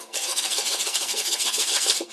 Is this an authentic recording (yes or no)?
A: no